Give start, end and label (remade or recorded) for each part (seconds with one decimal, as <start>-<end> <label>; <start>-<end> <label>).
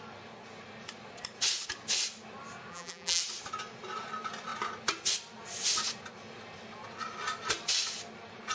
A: 0.0-2.7 recorded; 2.7-3.2 remade; 3.2-8.5 recorded